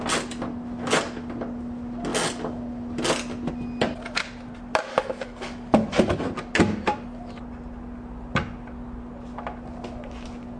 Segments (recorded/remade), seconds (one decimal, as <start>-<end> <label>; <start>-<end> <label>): 0.0-4.9 recorded; 4.9-6.2 remade; 6.2-10.6 recorded